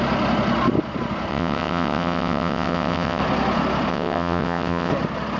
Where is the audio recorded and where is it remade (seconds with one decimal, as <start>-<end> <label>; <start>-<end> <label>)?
0.0-1.3 recorded; 1.3-3.2 remade; 3.2-3.9 recorded; 3.9-4.9 remade; 4.9-5.4 recorded